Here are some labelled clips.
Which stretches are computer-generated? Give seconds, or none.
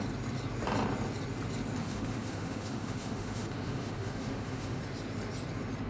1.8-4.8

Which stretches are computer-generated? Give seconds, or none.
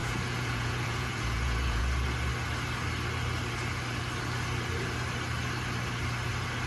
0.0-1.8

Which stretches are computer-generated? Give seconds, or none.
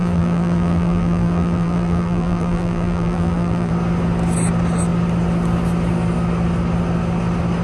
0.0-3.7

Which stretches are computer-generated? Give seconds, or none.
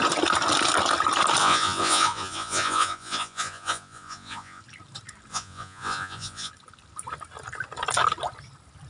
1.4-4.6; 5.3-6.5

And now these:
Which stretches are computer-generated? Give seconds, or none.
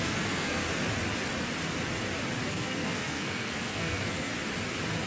0.0-0.6; 2.5-4.3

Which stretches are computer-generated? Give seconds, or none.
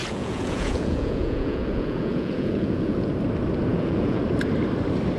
0.0-3.1; 3.7-4.2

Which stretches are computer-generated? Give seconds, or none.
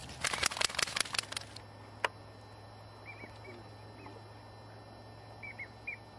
none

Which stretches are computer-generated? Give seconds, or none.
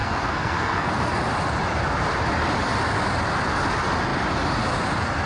0.0-1.1